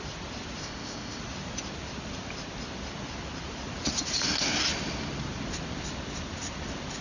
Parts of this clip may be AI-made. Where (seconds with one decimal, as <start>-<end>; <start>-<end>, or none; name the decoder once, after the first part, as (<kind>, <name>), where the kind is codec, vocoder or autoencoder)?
0.6-1.2 (codec, ZipCodec)